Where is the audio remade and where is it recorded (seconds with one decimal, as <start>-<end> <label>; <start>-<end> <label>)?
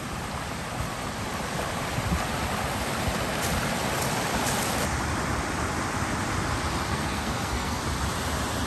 0.0-6.9 recorded; 6.9-7.8 remade; 7.8-8.7 recorded